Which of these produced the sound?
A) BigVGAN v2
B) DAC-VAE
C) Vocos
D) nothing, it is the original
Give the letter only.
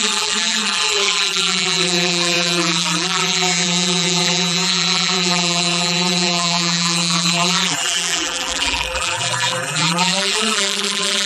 A